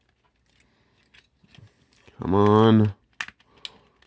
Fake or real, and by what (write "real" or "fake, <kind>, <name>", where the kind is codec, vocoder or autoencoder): real